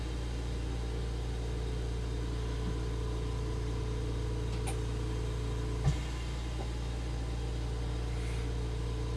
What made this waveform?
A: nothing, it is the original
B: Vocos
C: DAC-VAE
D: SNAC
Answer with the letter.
A